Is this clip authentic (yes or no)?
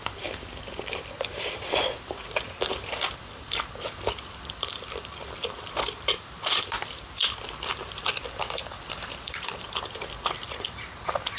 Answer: no